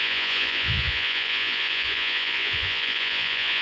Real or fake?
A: fake